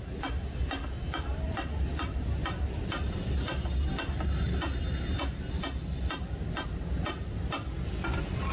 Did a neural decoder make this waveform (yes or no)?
no